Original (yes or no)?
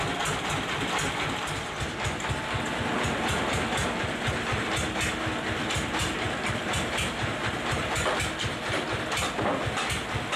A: yes